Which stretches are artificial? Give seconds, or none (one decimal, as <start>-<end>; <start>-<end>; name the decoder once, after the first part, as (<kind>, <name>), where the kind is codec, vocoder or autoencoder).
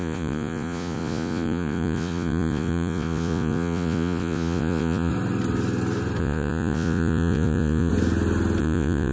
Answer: 0.0-5.1 (vocoder, Vocos); 6.2-7.9; 8.6-9.1